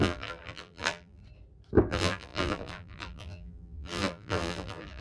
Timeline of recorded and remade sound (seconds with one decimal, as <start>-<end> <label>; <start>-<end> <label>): 0.0-1.2 remade; 1.2-1.9 recorded; 1.9-5.0 remade